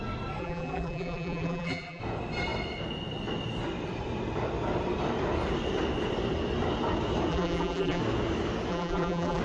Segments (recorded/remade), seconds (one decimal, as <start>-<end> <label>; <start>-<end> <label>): 0.0-0.4 recorded; 0.4-2.0 remade; 2.0-7.3 recorded; 7.3-8.0 remade; 8.0-8.7 recorded; 8.7-9.4 remade